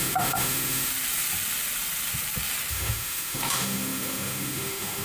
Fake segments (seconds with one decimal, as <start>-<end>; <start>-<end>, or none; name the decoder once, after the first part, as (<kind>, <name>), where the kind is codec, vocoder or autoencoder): 0.0-0.9 (autoencoder, DAC-VAE); 2.7-5.0

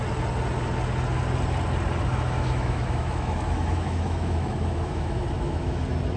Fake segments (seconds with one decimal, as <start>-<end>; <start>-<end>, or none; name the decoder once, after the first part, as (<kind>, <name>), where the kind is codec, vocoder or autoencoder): 2.1-5.8 (autoencoder, DAC-VAE)

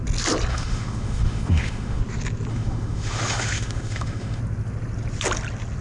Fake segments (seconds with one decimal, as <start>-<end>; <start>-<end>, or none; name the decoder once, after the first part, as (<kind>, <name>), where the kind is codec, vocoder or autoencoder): 0.5-2.0 (autoencoder, DAC-VAE); 2.5-4.4

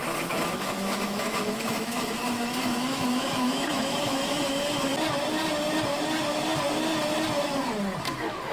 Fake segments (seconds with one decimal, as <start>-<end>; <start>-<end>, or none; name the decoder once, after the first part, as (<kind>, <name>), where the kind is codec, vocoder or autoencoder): 0.0-4.9 (autoencoder, DAC-VAE); 8.0-8.5

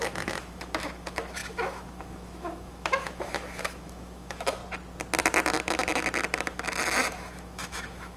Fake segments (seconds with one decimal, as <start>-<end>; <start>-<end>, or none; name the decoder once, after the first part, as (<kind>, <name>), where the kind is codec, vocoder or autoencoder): 0.0-4.6 (autoencoder, DAC-VAE); 6.4-8.2

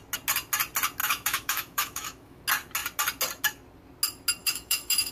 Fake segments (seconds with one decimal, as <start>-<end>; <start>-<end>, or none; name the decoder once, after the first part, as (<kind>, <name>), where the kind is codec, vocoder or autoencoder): 1.0-2.4 (autoencoder, DAC-VAE); 4.4-5.1